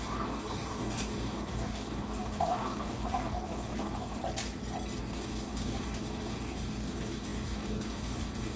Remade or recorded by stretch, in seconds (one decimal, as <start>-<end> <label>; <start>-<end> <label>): 0.0-4.2 remade; 4.2-5.0 recorded; 5.0-8.6 remade